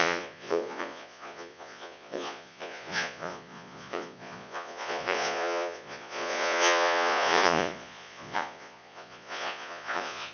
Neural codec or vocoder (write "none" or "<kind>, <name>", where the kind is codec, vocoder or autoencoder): vocoder, Vocos